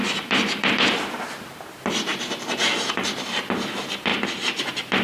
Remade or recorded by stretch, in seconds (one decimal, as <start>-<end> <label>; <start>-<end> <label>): 0.0-5.0 remade